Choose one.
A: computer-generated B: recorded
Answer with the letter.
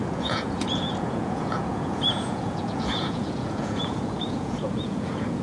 A